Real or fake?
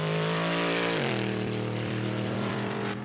fake